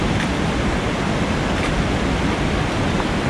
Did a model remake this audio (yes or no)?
no